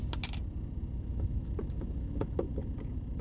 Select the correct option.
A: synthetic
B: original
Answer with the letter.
B